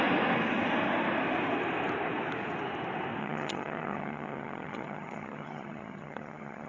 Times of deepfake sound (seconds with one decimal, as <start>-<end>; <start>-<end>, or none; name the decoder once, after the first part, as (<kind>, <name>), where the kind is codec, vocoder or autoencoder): 3.2-6.7 (vocoder, HiFi-GAN)